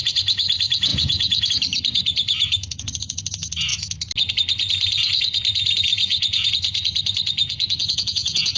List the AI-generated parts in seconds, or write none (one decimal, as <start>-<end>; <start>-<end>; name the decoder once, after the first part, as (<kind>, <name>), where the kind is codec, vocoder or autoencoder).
0.9-1.5 (vocoder, Vocos); 5.9-6.5; 7.4-8.6